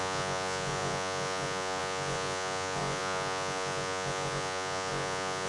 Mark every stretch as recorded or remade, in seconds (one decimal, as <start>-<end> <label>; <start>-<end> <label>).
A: 0.0-5.5 remade